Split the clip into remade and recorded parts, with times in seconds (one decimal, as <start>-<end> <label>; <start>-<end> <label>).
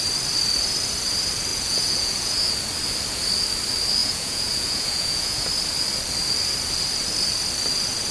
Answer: 0.0-1.5 recorded; 1.5-2.5 remade; 2.5-4.0 recorded; 4.0-5.5 remade; 5.5-8.1 recorded